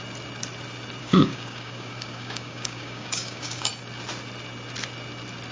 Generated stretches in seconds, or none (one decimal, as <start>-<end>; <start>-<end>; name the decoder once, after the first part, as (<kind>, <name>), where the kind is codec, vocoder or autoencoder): 1.0-3.7 (codec, DAC)